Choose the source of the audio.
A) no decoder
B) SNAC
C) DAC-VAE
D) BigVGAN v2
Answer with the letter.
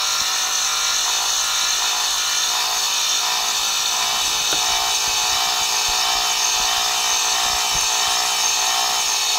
A